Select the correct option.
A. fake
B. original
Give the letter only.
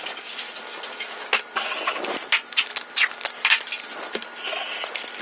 B